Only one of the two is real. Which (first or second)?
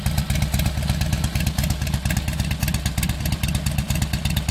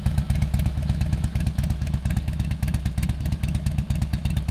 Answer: first